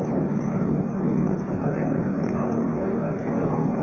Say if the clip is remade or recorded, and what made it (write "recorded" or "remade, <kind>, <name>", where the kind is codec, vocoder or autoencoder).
remade, codec, DAC